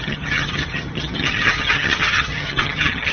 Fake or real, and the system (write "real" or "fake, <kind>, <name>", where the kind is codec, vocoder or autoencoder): fake, vocoder, HiFi-GAN